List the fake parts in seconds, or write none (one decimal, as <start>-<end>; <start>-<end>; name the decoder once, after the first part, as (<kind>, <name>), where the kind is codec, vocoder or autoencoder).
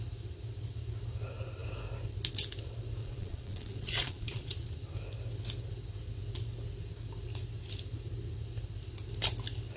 3.0-4.5 (vocoder, Vocos)